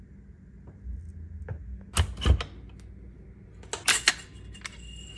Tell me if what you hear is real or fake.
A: real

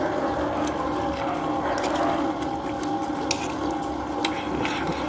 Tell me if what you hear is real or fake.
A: real